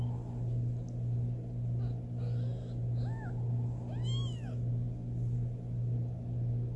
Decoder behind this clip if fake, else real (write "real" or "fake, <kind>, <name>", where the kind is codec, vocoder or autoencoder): real